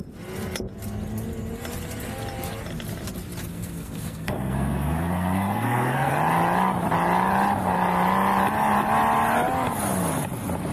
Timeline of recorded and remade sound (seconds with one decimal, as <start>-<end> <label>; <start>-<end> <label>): 0.0-3.5 recorded; 3.5-6.1 remade; 6.1-10.7 recorded